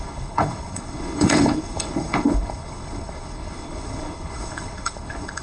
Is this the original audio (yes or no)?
no